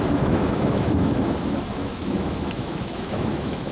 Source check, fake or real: fake